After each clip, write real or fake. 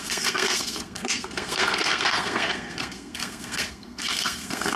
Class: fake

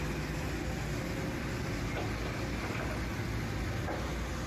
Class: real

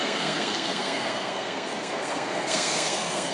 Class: fake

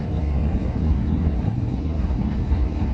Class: fake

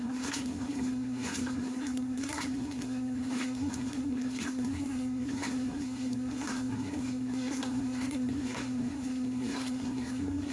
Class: fake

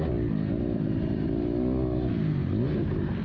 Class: real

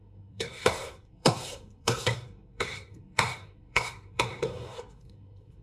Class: fake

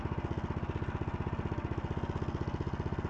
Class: real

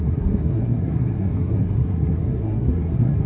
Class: fake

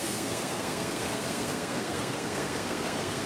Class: fake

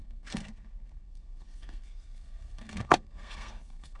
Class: fake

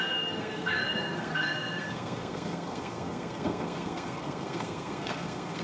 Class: fake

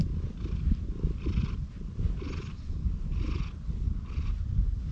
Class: real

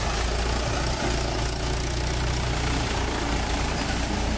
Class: real